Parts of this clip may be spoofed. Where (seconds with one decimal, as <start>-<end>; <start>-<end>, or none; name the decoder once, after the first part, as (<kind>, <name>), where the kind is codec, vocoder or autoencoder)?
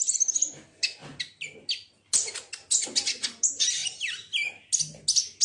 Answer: none